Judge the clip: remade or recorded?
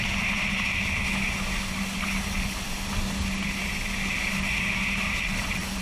recorded